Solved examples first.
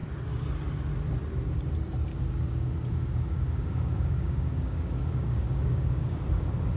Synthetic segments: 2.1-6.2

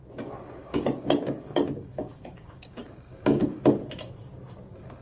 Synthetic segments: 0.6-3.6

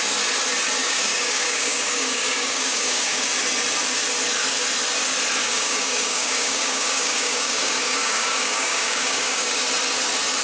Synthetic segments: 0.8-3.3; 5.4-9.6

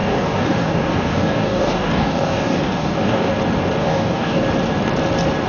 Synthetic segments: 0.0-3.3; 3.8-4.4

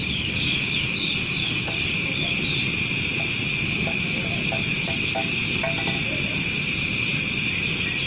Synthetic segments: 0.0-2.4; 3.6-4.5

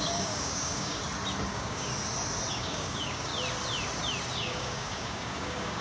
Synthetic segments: 0.0-1.0; 1.5-1.9; 2.5-3.3; 4.4-5.8